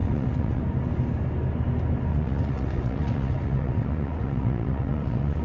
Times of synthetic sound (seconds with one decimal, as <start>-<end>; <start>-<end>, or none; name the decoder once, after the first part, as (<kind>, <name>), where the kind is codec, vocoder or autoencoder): 0.0-0.6 (vocoder, WaveNeXt); 2.1-5.4